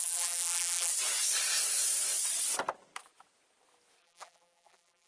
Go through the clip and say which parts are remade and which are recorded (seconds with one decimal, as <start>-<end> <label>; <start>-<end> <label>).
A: 0.0-0.9 remade; 0.9-4.0 recorded; 4.0-5.1 remade